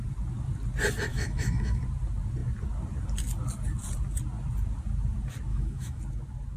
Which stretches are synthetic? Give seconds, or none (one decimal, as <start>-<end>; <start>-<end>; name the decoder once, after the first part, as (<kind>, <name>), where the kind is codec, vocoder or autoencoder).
1.1-1.8 (autoencoder, DAC-VAE); 5.5-6.0

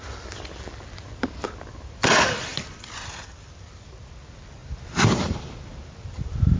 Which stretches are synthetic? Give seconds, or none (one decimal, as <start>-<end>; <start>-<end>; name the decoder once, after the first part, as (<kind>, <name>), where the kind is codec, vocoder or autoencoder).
4.6-5.9 (vocoder, BigVGAN v2)

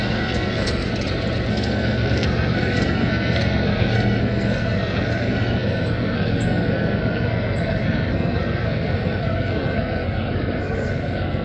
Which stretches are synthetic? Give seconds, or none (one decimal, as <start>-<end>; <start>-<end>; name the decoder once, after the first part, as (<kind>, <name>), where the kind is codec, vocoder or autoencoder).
0.0-0.9 (codec, SNAC); 1.5-11.4

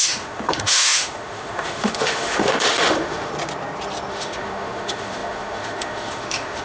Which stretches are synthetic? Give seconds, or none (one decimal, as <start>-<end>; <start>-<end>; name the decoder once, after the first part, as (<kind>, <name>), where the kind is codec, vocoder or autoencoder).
0.0-3.3 (autoencoder, DAC-VAE); 4.1-6.6

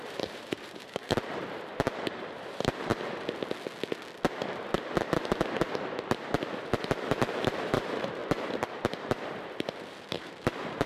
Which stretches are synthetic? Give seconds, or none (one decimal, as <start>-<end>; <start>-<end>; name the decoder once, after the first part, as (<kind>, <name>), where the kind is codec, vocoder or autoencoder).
0.0-2.9 (vocoder, BigVGAN v2); 7.1-8.2; 9.9-10.9

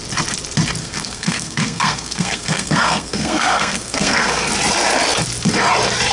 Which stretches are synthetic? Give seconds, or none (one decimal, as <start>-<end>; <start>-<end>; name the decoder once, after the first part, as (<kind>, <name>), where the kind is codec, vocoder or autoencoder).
0.8-4.5 (codec, SNAC)

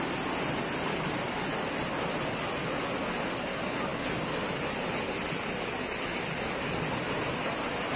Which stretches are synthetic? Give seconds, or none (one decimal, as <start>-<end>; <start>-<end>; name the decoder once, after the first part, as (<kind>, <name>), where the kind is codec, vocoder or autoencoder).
1.5-2.1 (vocoder, BigVGAN v2)

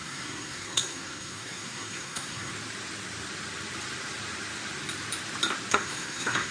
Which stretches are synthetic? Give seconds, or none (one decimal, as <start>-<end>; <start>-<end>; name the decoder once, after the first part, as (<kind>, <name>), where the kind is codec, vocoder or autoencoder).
0.0-2.5 (codec, SNAC); 5.7-6.5